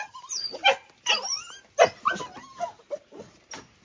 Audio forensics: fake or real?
real